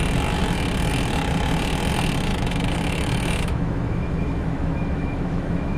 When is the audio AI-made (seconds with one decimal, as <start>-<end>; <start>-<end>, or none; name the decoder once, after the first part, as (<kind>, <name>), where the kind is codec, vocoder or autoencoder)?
2.3-5.8 (autoencoder, DAC-VAE)